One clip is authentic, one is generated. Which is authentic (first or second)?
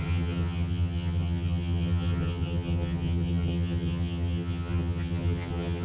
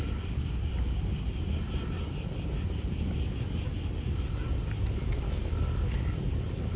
second